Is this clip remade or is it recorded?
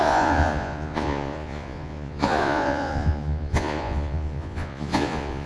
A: remade